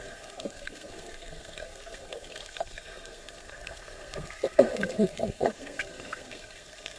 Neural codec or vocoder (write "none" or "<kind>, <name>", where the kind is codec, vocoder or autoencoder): codec, SNAC